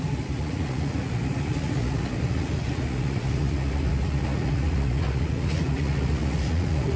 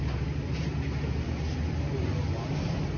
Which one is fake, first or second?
first